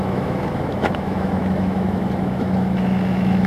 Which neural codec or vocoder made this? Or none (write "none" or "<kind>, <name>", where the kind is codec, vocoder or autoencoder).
autoencoder, DAC-VAE